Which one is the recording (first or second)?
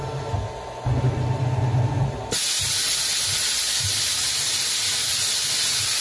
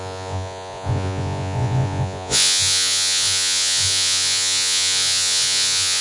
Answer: first